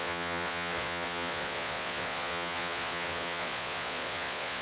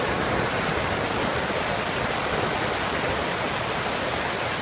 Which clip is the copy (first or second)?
first